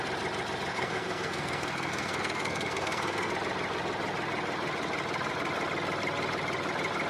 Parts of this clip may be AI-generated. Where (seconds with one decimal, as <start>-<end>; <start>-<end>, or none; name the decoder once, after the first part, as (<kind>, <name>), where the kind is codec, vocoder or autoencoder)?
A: 0.7-3.3 (codec, SNAC)